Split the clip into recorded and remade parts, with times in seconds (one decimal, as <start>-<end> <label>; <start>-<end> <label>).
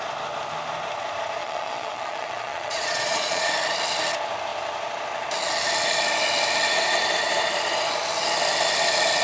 0.0-1.4 recorded; 1.4-3.5 remade; 3.5-9.2 recorded